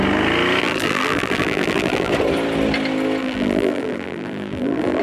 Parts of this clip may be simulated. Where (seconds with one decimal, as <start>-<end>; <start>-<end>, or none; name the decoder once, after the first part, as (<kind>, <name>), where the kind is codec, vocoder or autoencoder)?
0.6-2.1 (vocoder, BigVGAN v2); 3.2-5.0

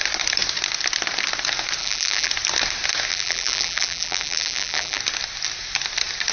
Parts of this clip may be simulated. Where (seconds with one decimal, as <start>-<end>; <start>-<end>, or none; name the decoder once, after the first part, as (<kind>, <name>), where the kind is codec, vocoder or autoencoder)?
1.8-2.3 (vocoder, BigVGAN v2); 3.1-5.0

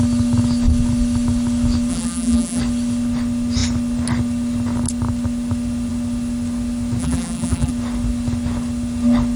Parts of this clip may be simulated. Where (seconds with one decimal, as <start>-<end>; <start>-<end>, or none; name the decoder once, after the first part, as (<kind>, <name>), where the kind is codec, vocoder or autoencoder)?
1.9-2.6 (vocoder, BigVGAN v2); 7.0-7.7

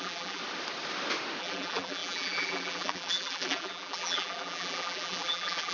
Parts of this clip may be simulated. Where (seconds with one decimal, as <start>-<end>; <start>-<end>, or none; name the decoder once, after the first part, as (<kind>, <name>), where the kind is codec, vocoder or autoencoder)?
0.0-0.4 (vocoder, BigVGAN v2); 1.4-5.7